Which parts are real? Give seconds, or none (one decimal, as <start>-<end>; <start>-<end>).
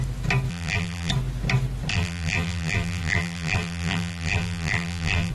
0.0-0.5; 1.1-1.9